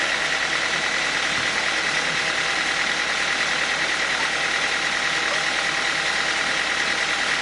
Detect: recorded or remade recorded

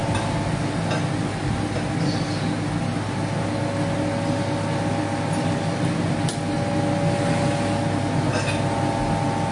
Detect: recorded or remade recorded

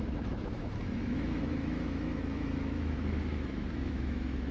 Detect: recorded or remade remade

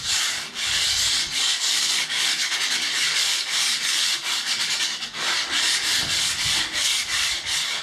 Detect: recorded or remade remade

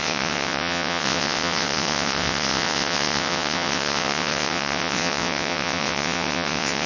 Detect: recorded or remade remade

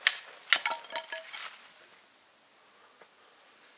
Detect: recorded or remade recorded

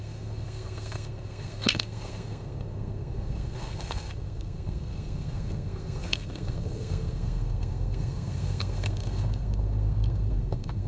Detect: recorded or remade remade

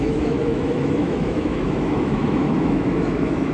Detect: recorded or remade remade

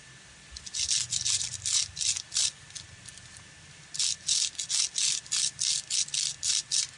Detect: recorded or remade recorded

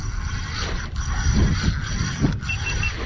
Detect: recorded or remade recorded